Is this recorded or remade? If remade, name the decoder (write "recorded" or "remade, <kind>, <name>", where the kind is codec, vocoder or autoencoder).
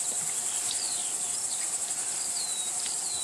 recorded